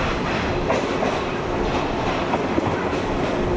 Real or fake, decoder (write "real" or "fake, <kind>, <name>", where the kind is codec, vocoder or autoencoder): real